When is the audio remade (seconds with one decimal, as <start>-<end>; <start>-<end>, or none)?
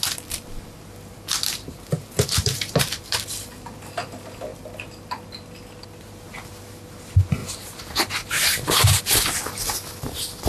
1.1-4.0; 7.4-9.0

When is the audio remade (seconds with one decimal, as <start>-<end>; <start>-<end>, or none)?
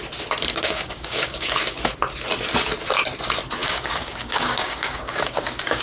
0.5-1.8; 3.6-5.8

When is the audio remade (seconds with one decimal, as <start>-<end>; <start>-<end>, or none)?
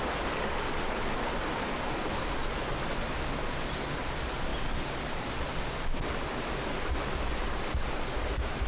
none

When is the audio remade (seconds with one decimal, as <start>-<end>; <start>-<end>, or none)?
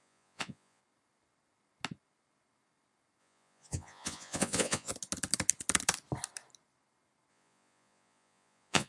0.0-0.8; 3.2-4.9; 7.3-8.9